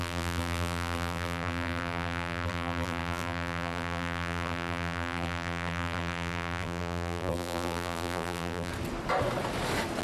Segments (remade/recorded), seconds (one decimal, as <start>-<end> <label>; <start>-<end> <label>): 0.0-8.7 remade; 8.7-10.0 recorded